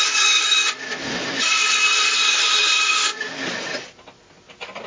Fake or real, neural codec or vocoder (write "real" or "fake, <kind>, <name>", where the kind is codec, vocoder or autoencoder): real